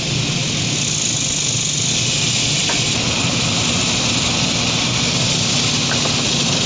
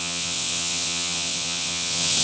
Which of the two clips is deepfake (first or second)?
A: second